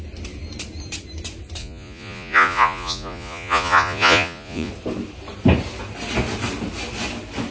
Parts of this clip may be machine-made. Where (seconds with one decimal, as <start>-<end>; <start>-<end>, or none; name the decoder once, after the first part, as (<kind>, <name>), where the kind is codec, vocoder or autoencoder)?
1.6-4.7 (vocoder, Vocos)